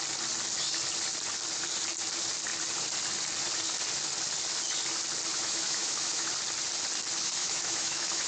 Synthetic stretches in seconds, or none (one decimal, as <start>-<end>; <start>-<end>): 5.3-6.3; 7.4-8.3